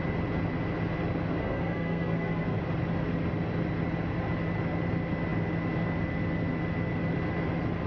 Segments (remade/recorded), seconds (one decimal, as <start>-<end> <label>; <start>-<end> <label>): 0.0-1.4 recorded; 1.4-2.6 remade; 2.6-7.9 recorded